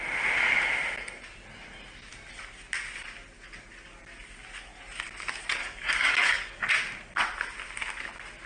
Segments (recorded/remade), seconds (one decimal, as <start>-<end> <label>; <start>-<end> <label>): 0.0-5.6 recorded; 5.6-6.7 remade; 6.7-8.5 recorded